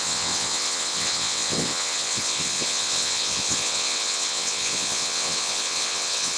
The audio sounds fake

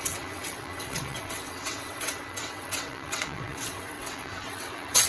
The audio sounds fake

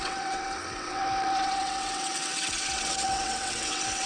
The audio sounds fake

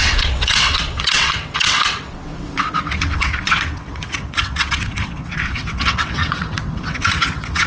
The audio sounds fake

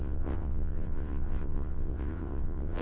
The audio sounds fake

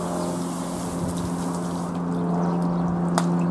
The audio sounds real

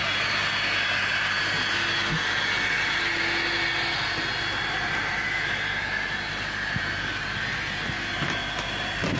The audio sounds real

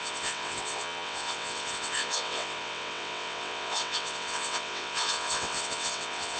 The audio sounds fake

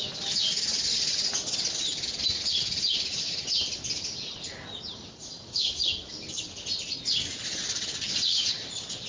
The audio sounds real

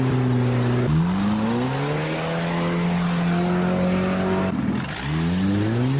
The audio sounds real